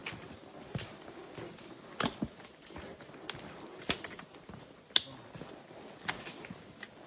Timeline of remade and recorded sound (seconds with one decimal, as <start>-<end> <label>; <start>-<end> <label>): 0.0-7.1 recorded